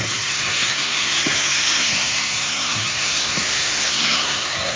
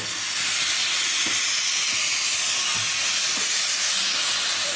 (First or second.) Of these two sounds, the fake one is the first